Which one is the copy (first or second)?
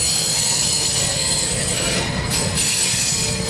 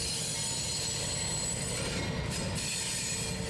first